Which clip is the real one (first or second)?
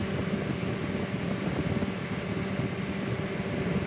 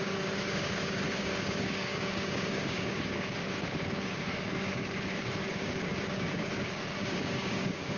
first